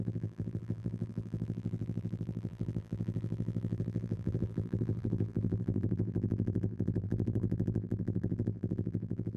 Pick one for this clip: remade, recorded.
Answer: remade